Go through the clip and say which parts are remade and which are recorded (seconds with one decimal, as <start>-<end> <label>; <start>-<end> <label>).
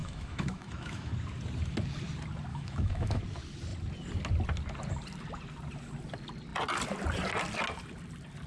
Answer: 0.0-1.1 remade; 1.1-2.5 recorded; 2.5-3.2 remade; 3.2-8.5 recorded